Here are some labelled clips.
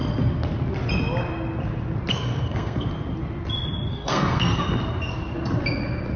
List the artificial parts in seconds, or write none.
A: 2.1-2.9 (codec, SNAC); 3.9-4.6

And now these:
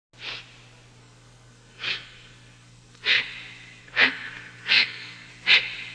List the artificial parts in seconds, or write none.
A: 1.0-3.2 (codec, SNAC); 3.8-5.3

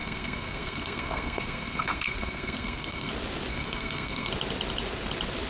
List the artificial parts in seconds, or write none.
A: 0.0-3.1 (codec, SNAC); 3.5-4.3

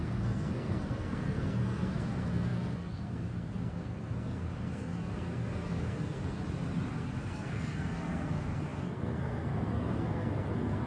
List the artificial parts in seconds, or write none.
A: 0.0-6.4 (codec, SNAC); 6.9-10.9